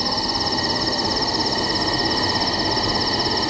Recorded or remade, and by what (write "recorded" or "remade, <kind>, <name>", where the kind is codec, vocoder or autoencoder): recorded